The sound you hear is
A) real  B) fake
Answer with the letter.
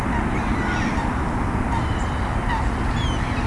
A